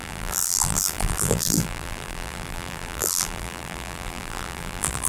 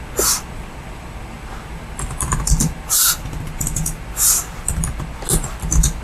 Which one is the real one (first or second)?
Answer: second